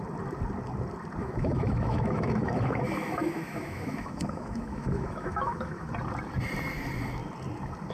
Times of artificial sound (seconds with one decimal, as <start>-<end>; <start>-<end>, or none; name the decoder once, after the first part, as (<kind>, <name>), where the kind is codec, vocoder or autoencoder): 1.2-5.9 (autoencoder, DAC-VAE)